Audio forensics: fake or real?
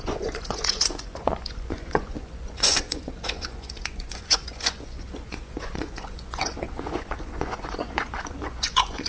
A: fake